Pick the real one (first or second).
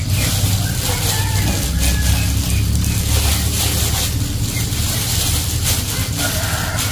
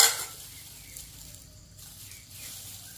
first